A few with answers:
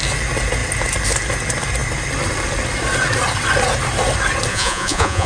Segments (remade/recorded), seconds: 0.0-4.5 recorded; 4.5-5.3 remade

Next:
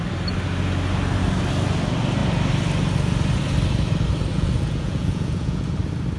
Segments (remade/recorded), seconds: 0.0-4.3 recorded; 4.3-5.8 remade; 5.8-6.2 recorded

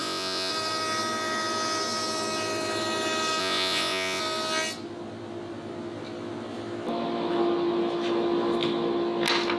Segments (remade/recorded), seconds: 0.0-0.5 remade; 0.5-3.4 recorded; 3.4-4.2 remade; 4.2-9.6 recorded

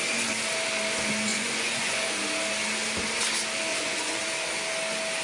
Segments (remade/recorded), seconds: 0.0-1.3 recorded; 1.3-2.2 remade; 2.2-3.7 recorded; 3.7-4.2 remade; 4.2-5.2 recorded

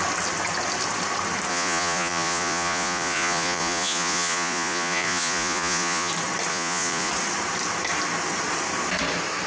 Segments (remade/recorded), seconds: 0.0-1.5 recorded; 1.5-6.1 remade; 6.1-6.5 recorded; 6.5-7.1 remade; 7.1-9.5 recorded